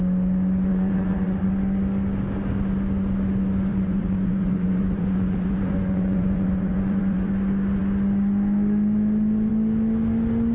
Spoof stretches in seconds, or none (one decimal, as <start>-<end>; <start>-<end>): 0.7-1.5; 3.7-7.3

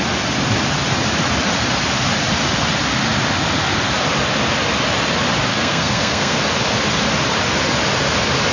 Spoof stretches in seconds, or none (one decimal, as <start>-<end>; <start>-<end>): 5.5-6.4

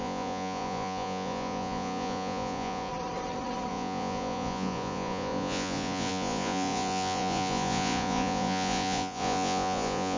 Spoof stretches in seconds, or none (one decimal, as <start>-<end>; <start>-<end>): 0.0-2.9; 3.7-10.2

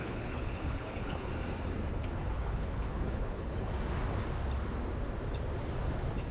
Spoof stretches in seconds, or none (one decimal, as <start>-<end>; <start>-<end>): 0.0-1.3; 2.2-3.7

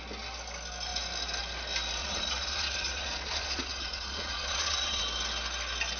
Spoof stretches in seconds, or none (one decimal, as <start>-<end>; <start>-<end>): 2.0-5.0

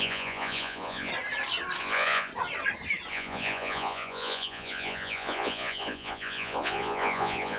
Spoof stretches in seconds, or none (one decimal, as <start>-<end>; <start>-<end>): 0.0-1.1; 1.8-2.3; 3.1-7.6